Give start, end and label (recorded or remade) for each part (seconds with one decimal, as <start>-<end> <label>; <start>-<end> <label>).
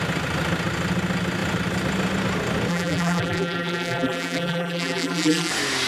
0.0-2.7 recorded; 2.7-5.5 remade; 5.5-5.9 recorded